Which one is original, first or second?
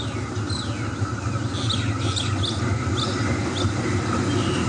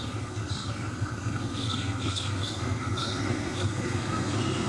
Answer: first